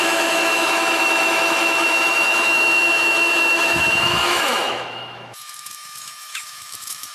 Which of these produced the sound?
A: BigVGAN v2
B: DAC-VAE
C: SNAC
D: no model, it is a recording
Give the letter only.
B